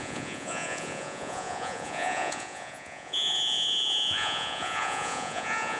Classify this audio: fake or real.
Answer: fake